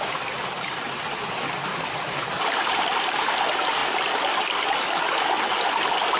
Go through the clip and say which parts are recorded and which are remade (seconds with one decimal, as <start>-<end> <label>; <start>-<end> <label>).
0.0-1.7 recorded; 1.7-2.4 remade; 2.4-6.2 recorded